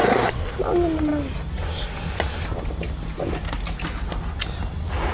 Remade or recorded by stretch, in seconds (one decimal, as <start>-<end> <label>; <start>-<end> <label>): 0.0-0.6 remade; 0.6-5.1 recorded